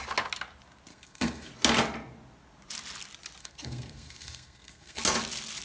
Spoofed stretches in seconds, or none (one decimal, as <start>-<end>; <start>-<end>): 0.9-1.5; 3.4-5.0